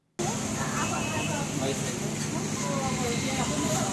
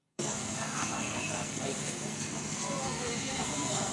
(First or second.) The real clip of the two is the first